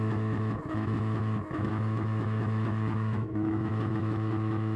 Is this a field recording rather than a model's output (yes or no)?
no